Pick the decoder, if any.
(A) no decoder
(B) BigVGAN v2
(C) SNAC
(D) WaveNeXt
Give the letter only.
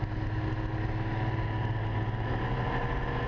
A